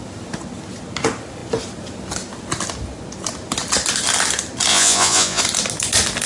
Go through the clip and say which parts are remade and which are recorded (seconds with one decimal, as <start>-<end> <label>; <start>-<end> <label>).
0.0-4.7 recorded; 4.7-5.4 remade; 5.4-6.3 recorded